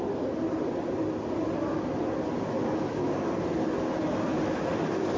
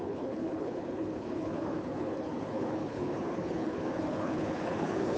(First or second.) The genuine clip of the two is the first